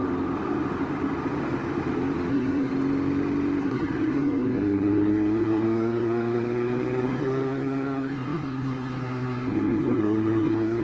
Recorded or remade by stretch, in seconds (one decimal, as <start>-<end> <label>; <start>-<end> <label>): 0.0-2.3 recorded; 2.3-2.7 remade; 2.7-3.6 recorded; 3.6-10.8 remade